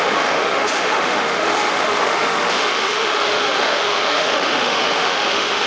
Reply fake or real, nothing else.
fake